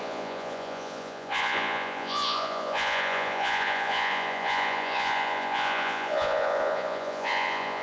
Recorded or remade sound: remade